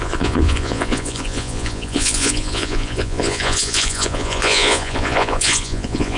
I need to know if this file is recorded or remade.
remade